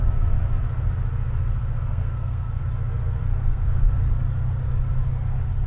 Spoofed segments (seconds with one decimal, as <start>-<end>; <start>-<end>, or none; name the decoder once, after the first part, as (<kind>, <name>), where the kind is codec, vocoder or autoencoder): 1.9-2.6 (codec, SNAC); 3.2-3.8